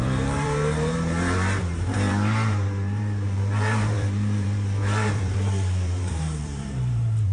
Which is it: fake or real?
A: fake